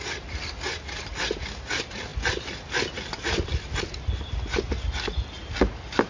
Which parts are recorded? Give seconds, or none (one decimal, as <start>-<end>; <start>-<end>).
0.0-6.1